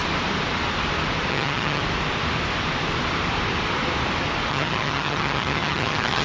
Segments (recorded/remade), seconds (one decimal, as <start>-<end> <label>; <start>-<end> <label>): 0.0-1.3 recorded; 1.3-1.8 remade; 1.8-4.5 recorded; 4.5-6.2 remade